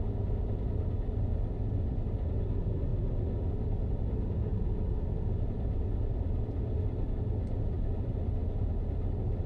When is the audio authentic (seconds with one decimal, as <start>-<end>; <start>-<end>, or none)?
0.0-9.5